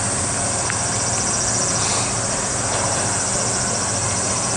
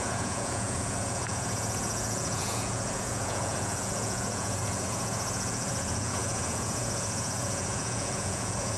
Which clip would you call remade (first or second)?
second